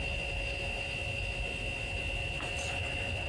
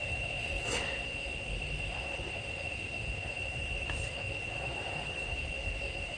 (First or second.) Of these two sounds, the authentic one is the first